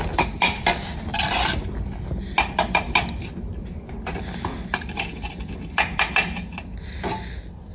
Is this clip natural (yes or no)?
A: yes